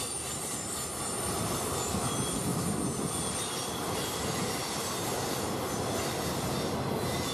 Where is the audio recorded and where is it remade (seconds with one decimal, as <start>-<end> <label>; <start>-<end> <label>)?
0.0-7.3 recorded